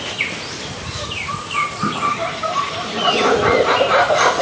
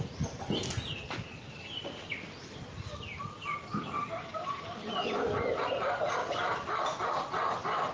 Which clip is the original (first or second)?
second